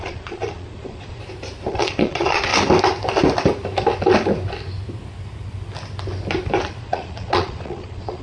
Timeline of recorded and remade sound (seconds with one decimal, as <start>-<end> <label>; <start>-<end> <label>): 0.0-1.2 remade; 1.2-1.7 recorded; 1.7-2.5 remade; 2.5-6.8 recorded; 6.8-8.2 remade